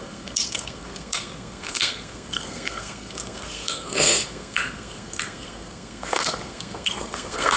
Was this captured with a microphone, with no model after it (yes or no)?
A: no